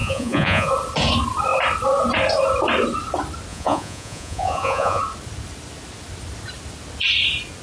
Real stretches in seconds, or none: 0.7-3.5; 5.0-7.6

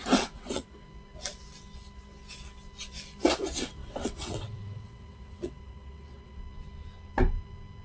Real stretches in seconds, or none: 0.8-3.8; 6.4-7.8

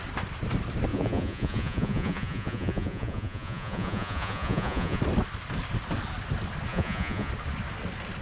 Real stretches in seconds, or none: 0.0-0.9; 5.0-6.7; 7.3-8.2

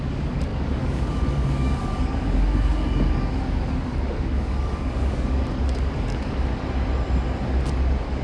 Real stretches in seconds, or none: 6.5-7.7

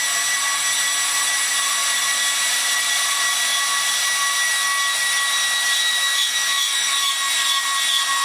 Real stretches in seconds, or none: 0.0-5.8; 7.1-8.2

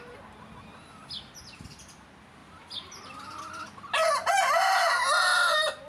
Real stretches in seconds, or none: 0.0-2.4; 3.4-5.9